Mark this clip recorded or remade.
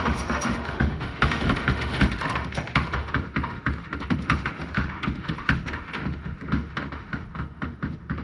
remade